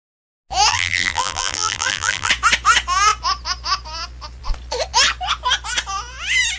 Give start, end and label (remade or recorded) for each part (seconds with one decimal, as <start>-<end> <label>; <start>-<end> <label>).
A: 0.0-0.7 recorded; 0.7-2.3 remade; 2.3-6.6 recorded